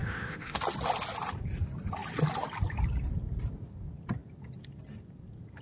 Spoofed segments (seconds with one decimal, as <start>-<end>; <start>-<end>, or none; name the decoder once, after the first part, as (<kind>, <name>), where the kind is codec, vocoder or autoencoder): 0.0-0.6 (autoencoder, DAC-VAE)